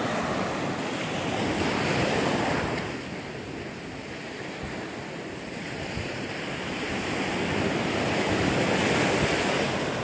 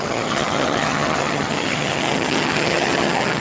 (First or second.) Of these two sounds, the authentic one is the first